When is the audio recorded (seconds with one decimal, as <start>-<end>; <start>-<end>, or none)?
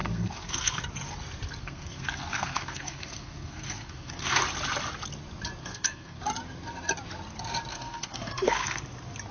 0.8-1.6; 4.4-5.6; 6.2-7.7; 8.8-9.3